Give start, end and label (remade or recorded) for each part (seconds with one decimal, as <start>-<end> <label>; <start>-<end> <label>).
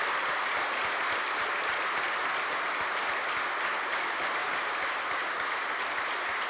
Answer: 0.0-6.5 recorded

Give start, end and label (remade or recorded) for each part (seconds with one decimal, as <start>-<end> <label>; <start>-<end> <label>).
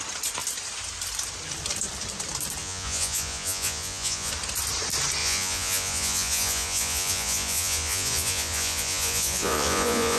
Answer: 0.0-2.6 recorded; 2.6-4.3 remade; 4.3-5.2 recorded; 5.2-10.2 remade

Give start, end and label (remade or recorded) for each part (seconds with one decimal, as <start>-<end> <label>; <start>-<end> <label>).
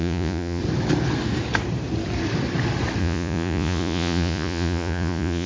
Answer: 0.0-0.6 remade; 0.6-3.0 recorded; 3.0-5.5 remade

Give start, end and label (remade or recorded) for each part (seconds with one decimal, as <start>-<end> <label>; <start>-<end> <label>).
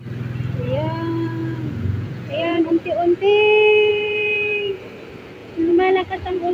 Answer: 0.0-1.4 recorded; 1.4-2.7 remade; 2.7-3.9 recorded; 3.9-4.8 remade; 4.8-5.4 recorded; 5.4-6.5 remade